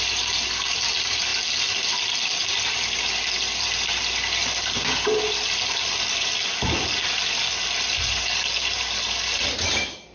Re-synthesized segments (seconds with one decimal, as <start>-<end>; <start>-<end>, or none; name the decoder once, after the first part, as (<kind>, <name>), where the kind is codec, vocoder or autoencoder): none